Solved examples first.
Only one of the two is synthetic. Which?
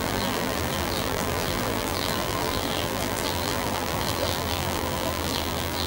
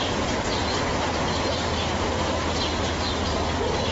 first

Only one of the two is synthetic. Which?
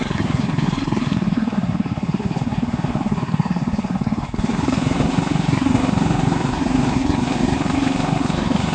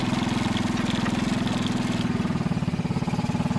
first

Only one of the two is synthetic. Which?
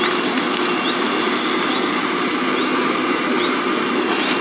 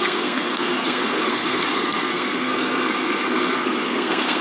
second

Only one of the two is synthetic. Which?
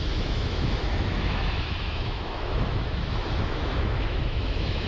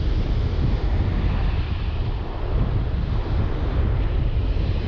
first